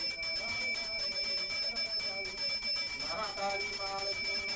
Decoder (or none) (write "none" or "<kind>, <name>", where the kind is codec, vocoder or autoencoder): none